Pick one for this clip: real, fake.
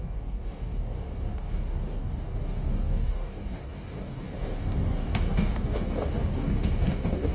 fake